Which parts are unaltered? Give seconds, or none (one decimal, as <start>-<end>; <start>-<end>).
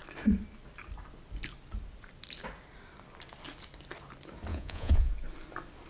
0.0-4.5; 5.1-5.9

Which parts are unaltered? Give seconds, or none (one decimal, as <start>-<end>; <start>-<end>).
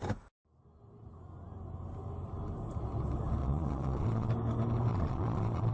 0.0-3.4; 4.3-4.9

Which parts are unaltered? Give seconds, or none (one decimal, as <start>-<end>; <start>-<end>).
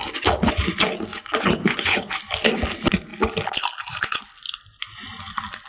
0.0-1.1; 2.1-5.7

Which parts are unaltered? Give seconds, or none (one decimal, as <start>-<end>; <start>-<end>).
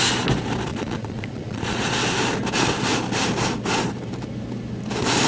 0.0-0.7; 1.8-5.3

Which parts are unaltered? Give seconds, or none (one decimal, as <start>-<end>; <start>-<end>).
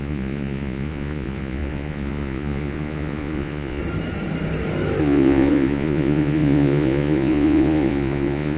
3.8-5.0